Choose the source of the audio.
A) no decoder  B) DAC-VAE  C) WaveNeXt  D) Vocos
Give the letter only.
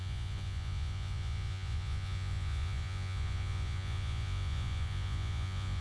D